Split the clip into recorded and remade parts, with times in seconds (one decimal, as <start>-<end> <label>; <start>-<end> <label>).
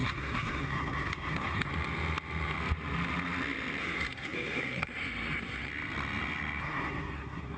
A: 0.0-1.7 remade; 1.7-3.8 recorded; 3.8-5.7 remade; 5.7-6.6 recorded; 6.6-7.6 remade